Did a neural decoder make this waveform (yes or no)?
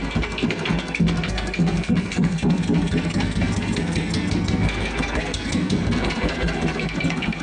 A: yes